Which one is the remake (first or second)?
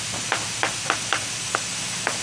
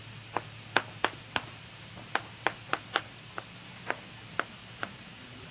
second